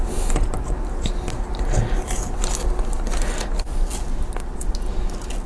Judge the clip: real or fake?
real